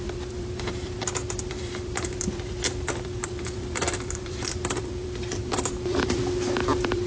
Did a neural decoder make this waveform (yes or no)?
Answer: yes